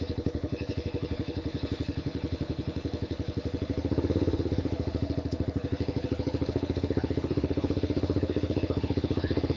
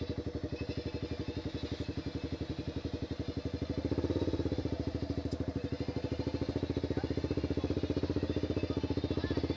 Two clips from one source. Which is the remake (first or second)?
first